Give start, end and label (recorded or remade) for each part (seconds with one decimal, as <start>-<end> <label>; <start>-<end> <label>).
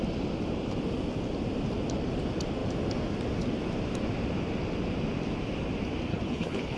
0.0-6.1 recorded; 6.1-6.8 remade